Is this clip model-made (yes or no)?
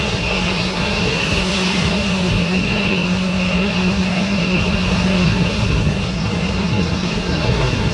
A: yes